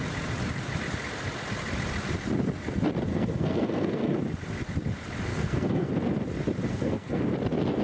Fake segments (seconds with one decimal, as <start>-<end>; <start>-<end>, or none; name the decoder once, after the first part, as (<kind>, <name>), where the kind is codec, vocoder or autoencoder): 3.1-4.2 (codec, SNAC); 5.3-5.9; 6.7-7.2